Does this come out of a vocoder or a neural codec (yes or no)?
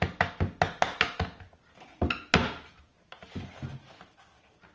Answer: no